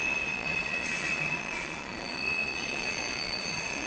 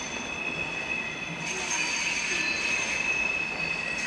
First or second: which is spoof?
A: first